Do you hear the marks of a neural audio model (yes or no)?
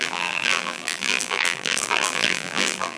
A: yes